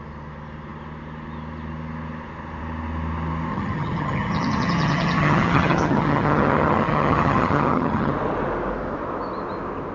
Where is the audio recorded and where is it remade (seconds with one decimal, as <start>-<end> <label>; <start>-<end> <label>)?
0.0-3.5 recorded; 3.5-8.1 remade; 8.1-9.9 recorded